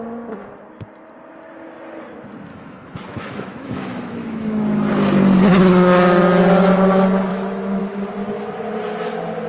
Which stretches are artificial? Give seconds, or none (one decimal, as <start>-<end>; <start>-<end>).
2.5-4.9; 7.3-7.8